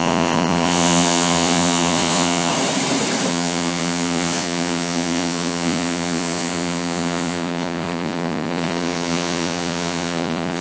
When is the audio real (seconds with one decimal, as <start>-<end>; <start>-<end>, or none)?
2.5-3.3